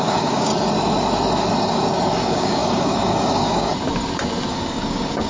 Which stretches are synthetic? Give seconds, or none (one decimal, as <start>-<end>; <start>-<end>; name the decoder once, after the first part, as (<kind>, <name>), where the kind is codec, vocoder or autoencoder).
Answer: 0.0-0.5 (codec, DAC); 2.2-3.7; 4.5-5.3